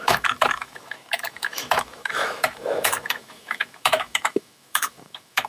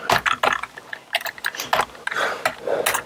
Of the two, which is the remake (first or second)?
first